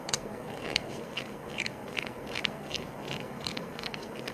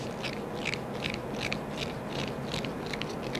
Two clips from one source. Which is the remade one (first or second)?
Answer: first